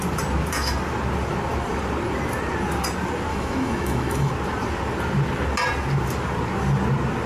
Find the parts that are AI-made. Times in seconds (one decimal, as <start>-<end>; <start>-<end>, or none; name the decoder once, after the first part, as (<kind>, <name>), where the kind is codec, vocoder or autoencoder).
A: 3.3-4.3 (autoencoder, DAC-VAE)